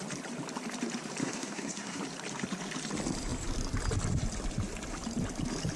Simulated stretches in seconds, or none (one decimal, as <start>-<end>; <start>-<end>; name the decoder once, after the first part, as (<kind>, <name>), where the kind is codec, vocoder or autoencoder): 1.2-2.0 (codec, SNAC)